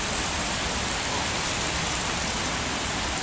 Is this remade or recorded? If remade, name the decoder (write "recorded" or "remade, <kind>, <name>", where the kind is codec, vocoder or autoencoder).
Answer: recorded